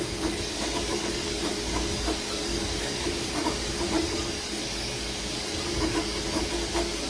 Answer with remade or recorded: remade